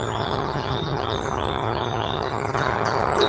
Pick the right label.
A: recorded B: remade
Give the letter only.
B